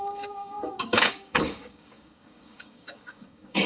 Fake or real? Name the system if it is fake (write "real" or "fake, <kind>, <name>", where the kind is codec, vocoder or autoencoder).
fake, codec, DAC